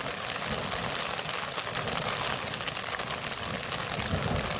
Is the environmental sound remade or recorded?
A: recorded